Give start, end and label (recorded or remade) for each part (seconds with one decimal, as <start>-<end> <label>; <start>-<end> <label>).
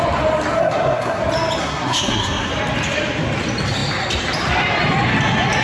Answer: 0.0-0.6 recorded; 0.6-1.2 remade; 1.2-1.6 recorded; 1.6-2.5 remade; 2.5-5.6 recorded